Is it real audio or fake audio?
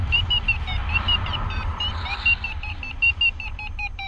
real